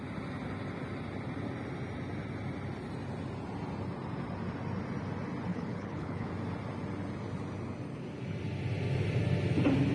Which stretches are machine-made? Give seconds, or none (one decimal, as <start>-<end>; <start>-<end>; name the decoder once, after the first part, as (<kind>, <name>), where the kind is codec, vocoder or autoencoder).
5.5-6.3 (codec, HILCodec)